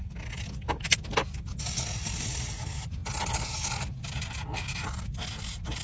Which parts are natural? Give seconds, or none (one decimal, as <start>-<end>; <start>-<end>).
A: 0.0-5.8